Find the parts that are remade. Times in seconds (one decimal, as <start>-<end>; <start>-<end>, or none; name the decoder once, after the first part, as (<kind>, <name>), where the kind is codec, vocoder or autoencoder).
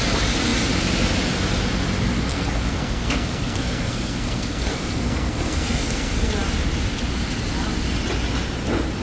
2.3-6.3 (codec, SNAC)